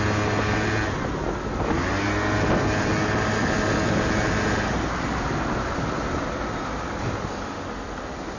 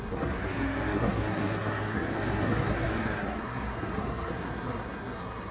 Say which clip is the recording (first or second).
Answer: first